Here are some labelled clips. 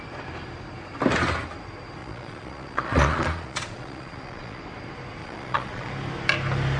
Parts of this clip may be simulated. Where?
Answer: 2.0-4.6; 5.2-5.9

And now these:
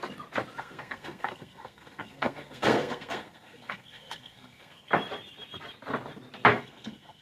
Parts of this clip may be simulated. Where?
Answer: 0.6-4.9; 6.5-7.2

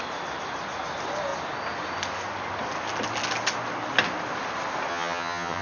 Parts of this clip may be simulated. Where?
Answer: 4.9-5.6

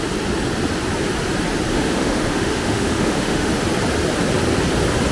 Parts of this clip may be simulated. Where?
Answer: 1.7-3.5

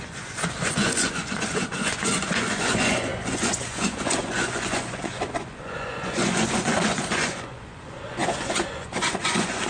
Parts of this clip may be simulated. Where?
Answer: 0.0-9.7

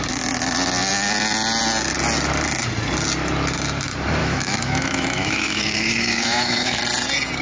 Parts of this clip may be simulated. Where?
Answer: 4.2-6.8

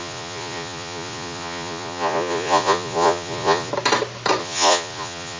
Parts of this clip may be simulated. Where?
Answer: 0.0-3.7; 4.4-5.4